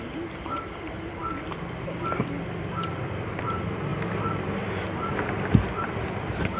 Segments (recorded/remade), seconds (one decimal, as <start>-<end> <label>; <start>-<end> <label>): 0.0-6.6 recorded